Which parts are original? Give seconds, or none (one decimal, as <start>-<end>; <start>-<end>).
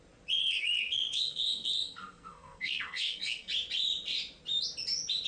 0.0-0.4; 3.5-5.3